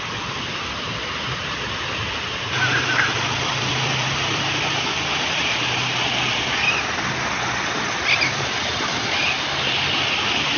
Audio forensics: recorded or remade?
remade